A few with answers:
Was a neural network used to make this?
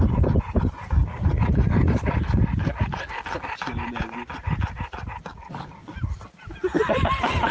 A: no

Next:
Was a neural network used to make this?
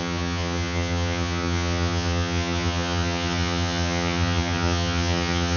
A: yes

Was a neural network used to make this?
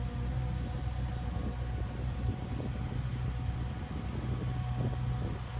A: no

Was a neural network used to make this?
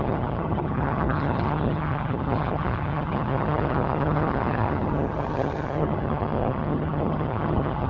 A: yes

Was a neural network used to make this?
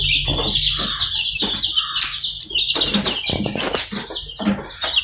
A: no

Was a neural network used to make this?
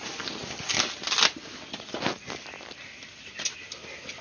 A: no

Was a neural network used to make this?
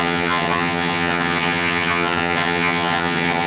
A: yes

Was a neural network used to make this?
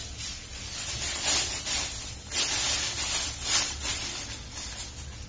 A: no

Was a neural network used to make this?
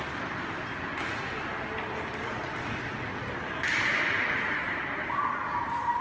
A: no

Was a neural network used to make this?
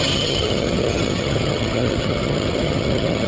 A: yes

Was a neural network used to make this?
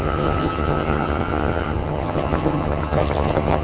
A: yes